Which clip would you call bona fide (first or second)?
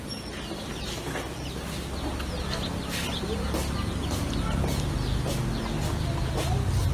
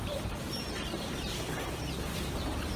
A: first